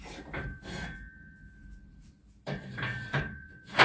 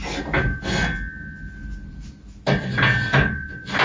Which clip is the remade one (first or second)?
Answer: first